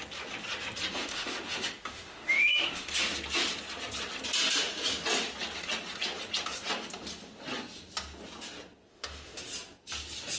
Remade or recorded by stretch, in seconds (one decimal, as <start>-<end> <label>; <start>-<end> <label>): 0.0-1.0 recorded; 1.0-2.9 remade; 2.9-8.9 recorded; 8.9-9.4 remade; 9.4-10.4 recorded